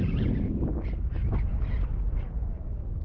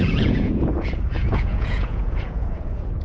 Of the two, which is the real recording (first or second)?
first